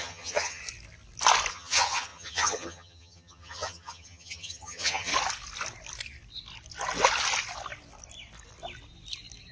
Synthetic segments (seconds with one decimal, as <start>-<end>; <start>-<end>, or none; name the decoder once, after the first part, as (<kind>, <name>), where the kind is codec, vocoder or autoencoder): 0.0-0.6 (vocoder, HiFi-GAN); 1.5-5.1